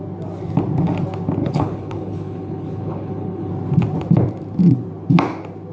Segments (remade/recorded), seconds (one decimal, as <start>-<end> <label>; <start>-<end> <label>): 0.0-1.4 recorded; 1.4-3.5 remade; 3.5-5.7 recorded